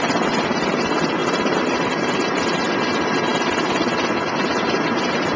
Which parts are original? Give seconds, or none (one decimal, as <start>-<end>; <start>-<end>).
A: 0.0-1.2; 2.4-5.4